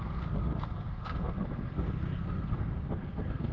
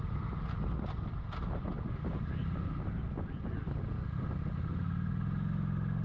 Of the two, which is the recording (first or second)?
second